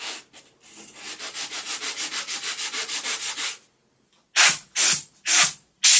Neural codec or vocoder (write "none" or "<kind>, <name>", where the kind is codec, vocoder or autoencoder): none